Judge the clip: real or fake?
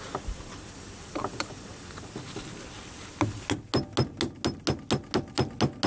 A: real